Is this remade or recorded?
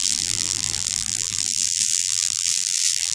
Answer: remade